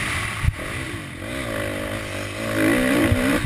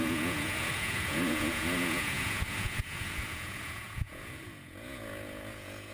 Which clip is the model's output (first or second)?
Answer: second